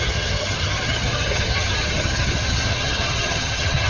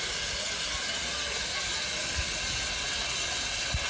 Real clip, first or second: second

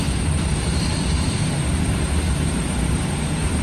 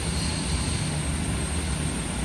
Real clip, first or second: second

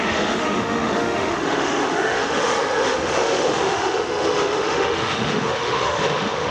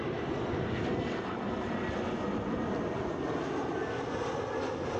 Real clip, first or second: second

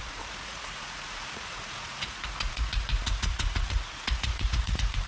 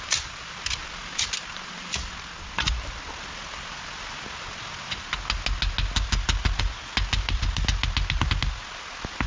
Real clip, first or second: second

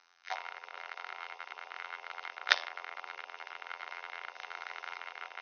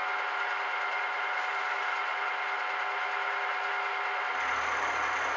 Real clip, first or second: second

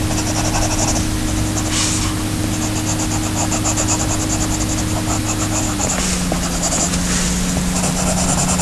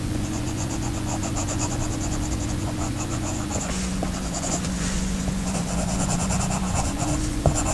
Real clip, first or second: first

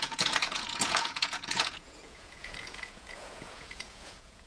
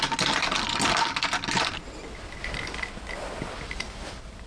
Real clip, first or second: second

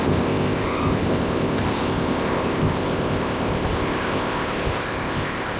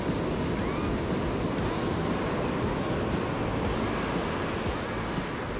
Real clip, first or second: second